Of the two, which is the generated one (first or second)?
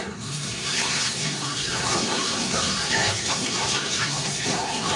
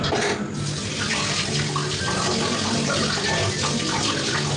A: first